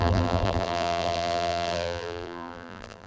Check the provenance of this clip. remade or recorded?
remade